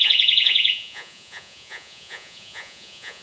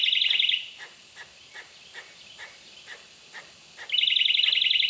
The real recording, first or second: second